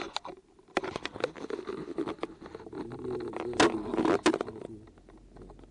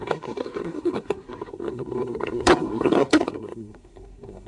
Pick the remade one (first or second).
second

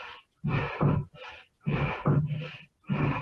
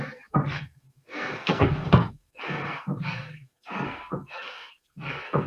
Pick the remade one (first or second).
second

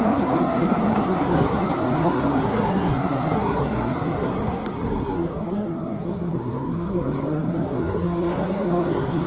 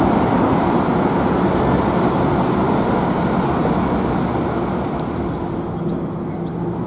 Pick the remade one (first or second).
first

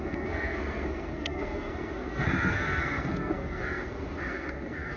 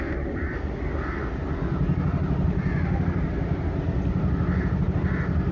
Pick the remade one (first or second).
first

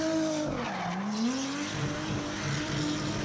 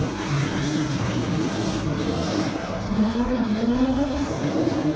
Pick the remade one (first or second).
second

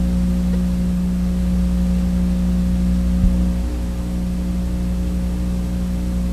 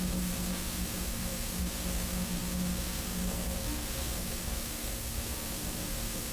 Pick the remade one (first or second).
second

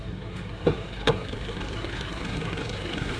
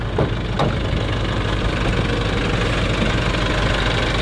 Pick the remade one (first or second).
first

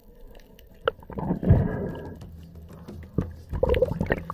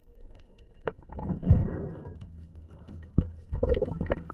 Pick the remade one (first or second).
second